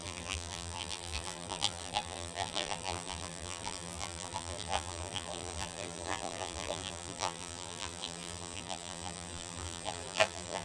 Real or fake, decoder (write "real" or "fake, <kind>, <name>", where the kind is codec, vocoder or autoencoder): fake, vocoder, BigVGAN v2